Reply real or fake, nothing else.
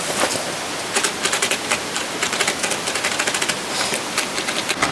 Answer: fake